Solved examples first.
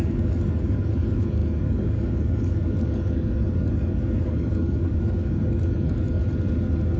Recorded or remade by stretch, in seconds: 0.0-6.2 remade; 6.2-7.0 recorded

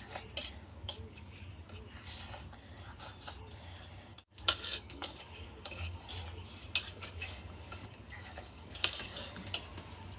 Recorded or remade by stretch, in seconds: 0.0-0.7 recorded; 0.7-1.5 remade; 1.5-4.1 recorded; 4.1-6.1 remade; 6.1-6.9 recorded; 6.9-9.4 remade; 9.4-10.2 recorded

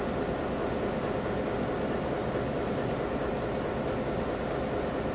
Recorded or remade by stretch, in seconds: 0.0-5.1 recorded

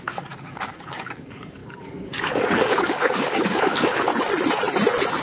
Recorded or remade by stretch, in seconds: 0.0-4.1 remade; 4.1-5.2 recorded

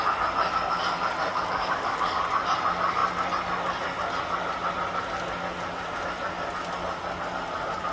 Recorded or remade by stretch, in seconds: 0.0-1.3 recorded; 1.3-2.2 remade; 2.2-7.9 recorded